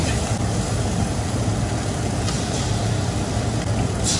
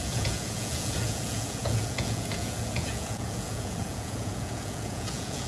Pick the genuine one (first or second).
first